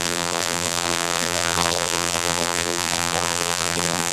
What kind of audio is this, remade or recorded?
remade